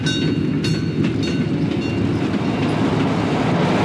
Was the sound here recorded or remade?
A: recorded